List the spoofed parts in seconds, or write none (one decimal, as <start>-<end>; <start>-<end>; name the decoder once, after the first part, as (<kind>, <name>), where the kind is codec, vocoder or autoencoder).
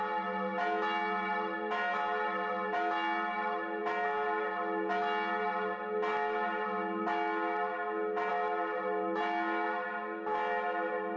none